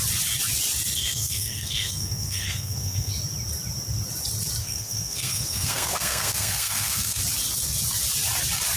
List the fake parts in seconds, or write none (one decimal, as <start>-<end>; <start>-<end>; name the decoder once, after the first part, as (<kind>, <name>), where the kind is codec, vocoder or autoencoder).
1.0-3.1 (codec, SNAC); 4.6-7.2